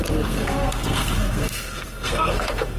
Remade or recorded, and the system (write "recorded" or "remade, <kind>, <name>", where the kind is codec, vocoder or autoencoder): remade, codec, SNAC